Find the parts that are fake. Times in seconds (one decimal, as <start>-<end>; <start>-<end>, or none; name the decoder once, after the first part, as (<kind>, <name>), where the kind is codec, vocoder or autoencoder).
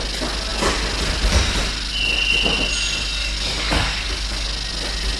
3.2-4.5 (codec, DAC)